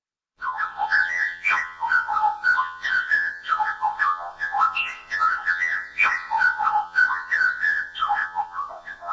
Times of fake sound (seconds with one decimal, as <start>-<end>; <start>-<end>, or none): 0.0-9.1